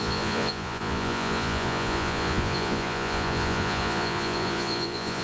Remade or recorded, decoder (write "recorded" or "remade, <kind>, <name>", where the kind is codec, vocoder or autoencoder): remade, vocoder, Vocos